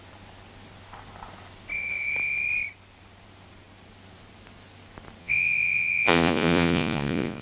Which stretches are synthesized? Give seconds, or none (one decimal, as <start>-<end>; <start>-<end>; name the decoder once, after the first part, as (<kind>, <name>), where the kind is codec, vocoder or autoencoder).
5.2-7.4 (vocoder, Vocos)